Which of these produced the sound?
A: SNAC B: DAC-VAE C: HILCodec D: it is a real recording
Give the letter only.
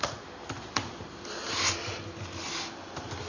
D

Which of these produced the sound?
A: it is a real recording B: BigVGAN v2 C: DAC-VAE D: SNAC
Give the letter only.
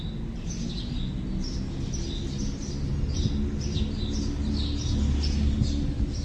A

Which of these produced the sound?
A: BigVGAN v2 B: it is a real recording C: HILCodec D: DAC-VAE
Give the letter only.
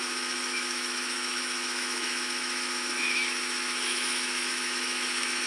D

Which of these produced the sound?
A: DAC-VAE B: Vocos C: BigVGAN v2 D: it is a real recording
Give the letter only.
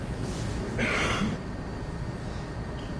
D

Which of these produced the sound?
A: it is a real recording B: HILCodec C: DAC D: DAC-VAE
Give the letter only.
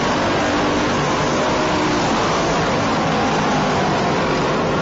A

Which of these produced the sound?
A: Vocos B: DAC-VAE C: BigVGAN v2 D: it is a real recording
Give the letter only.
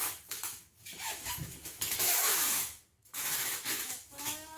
B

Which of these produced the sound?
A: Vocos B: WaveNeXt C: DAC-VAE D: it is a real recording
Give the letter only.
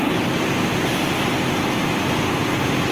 D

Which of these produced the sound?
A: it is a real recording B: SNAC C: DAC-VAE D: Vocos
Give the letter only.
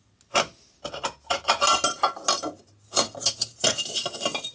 A